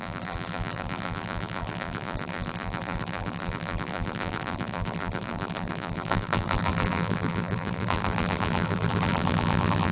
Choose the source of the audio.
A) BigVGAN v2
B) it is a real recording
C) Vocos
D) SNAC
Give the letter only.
A